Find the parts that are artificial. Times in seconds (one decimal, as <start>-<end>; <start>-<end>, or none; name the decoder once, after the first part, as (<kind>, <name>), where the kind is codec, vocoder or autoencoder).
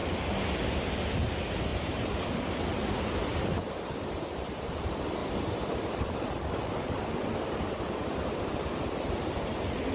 1.7-3.6 (vocoder, BigVGAN v2)